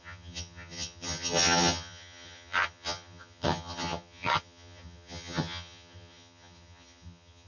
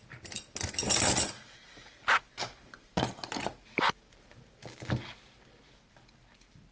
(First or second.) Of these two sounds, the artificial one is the first